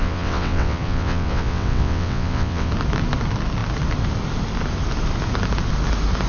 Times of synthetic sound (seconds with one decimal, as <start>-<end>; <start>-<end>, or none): 0.0-2.7

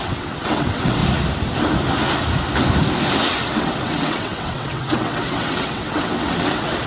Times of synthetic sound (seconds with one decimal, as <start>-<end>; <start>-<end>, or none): 0.0-1.0; 3.2-6.9

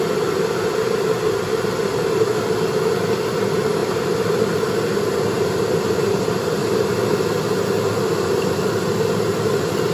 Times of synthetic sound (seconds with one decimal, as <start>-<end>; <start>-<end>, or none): 0.8-2.0; 6.6-7.2

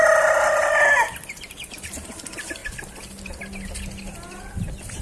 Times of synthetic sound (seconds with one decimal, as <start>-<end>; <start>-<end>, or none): none

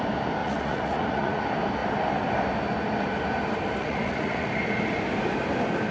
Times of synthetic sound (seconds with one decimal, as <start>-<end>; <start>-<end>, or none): 0.4-1.4; 3.8-4.5

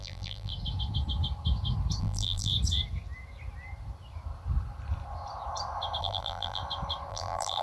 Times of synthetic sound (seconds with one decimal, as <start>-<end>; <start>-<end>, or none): 0.0-0.5; 2.0-2.5; 6.0-6.6; 7.1-7.6

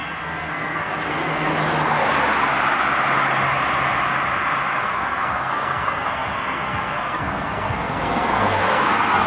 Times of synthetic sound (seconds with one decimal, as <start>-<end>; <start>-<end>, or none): 0.0-1.5; 4.8-9.3

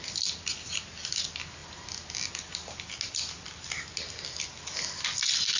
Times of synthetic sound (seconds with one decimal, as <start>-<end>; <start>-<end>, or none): none